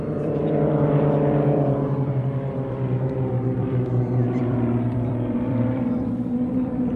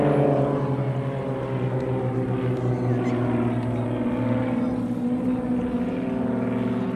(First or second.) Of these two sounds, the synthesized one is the first